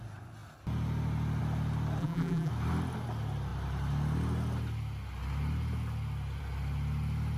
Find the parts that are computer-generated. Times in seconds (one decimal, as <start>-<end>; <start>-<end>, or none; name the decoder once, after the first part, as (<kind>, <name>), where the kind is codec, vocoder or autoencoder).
2.0-2.5 (vocoder, BigVGAN v2)